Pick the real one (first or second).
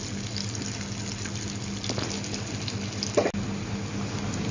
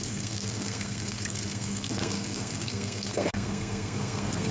first